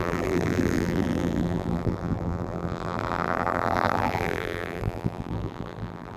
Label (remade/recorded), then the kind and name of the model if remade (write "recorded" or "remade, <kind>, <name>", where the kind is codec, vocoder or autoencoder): remade, vocoder, BigVGAN v2